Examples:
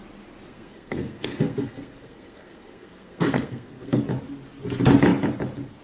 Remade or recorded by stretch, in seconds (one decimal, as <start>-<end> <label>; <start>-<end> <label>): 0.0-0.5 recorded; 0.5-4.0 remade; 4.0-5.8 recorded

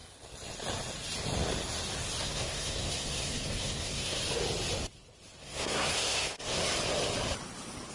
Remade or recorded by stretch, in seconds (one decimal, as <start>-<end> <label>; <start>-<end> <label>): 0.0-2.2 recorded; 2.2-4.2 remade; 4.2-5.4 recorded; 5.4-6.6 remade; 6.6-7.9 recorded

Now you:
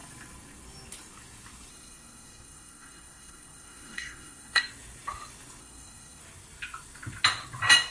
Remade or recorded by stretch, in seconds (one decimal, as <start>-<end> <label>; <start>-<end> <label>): 0.0-1.7 recorded; 1.7-4.6 remade; 4.6-5.6 recorded; 5.6-6.2 remade; 6.2-7.9 recorded